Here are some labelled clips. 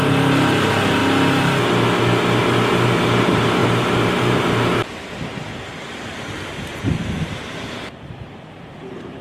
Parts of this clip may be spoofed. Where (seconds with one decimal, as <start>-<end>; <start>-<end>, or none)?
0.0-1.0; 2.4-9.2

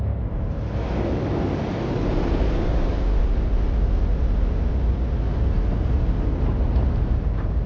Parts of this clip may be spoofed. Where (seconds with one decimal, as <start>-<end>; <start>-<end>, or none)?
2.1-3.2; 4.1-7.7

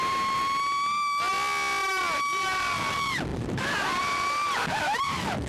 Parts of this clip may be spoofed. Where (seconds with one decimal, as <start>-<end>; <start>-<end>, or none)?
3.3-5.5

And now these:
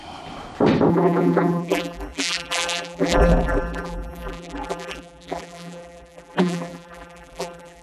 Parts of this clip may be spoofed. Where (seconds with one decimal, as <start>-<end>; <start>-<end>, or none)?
0.9-7.8

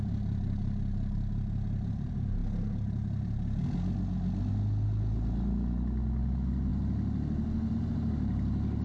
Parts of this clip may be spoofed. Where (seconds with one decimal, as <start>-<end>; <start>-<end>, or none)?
none